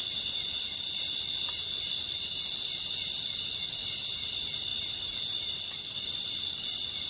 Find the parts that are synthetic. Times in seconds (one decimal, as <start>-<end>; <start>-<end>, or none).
none